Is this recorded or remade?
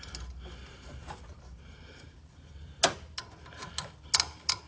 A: recorded